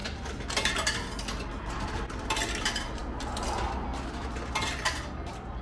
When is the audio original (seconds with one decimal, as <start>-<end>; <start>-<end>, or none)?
0.0-5.6